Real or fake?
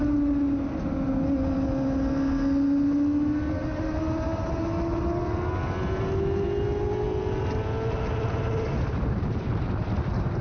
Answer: real